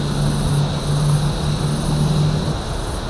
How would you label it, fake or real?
real